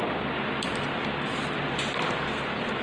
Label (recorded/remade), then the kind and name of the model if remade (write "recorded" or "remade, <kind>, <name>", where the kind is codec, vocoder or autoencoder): recorded